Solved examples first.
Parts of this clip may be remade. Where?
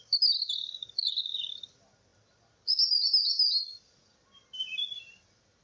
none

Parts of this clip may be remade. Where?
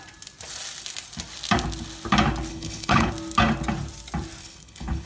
2.5-3.1 (codec, HILCodec); 4.4-5.1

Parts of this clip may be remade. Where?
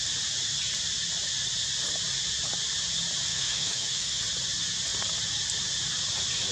3.3-4.2 (autoencoder, DAC-VAE)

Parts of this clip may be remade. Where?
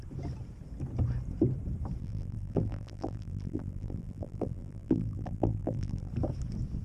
2.0-6.1 (vocoder, BigVGAN v2)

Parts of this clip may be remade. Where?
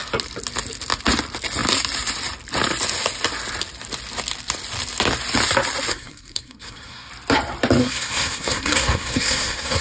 5.9-7.1 (codec, SNAC); 7.8-9.8